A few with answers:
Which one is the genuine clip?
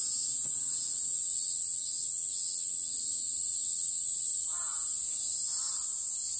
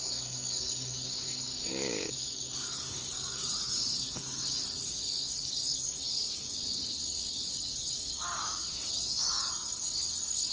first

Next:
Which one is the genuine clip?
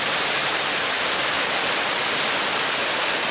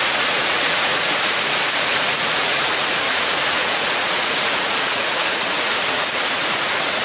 first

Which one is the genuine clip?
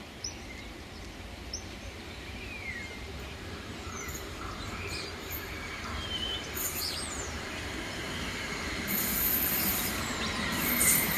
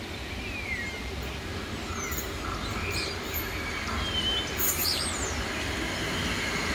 second